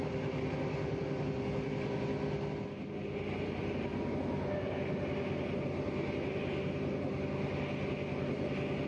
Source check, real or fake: real